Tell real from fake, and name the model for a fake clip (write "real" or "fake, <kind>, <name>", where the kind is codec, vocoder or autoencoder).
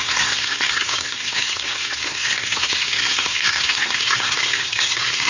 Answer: fake, codec, SNAC